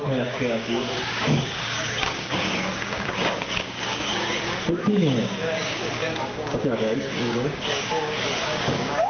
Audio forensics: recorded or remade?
remade